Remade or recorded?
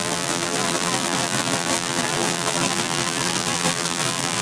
remade